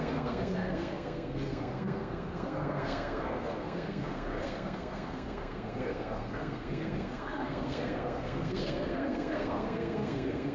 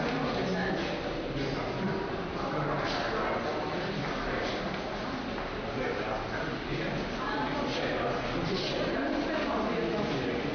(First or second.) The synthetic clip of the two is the first